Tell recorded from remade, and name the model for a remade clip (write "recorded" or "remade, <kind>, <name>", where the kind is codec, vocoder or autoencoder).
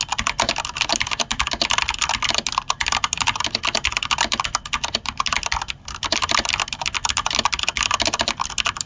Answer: recorded